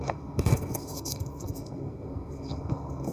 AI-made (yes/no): yes